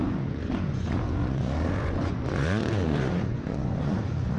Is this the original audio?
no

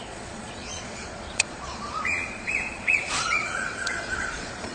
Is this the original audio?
no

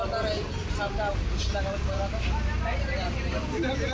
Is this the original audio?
yes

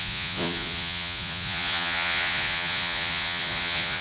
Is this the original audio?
no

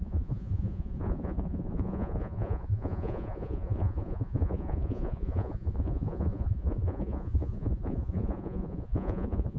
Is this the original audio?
no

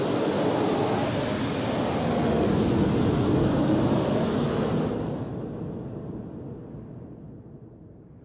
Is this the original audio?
yes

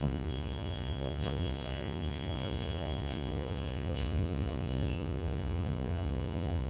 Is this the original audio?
no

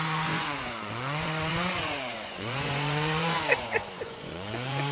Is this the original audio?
no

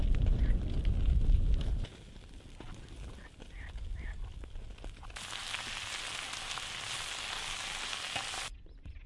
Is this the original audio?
yes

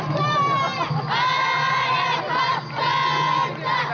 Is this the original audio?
yes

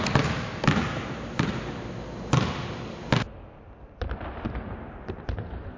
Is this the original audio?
yes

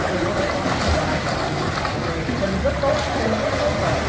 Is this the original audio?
yes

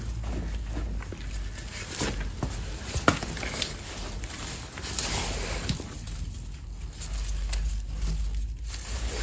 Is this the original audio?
yes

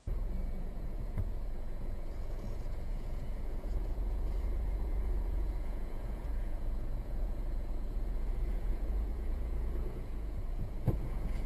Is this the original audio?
no